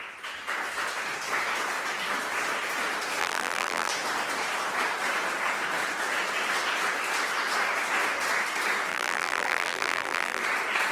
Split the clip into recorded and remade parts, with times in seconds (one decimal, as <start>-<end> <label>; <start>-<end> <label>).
0.0-3.2 recorded; 3.2-3.9 remade; 3.9-8.9 recorded; 8.9-10.4 remade; 10.4-10.9 recorded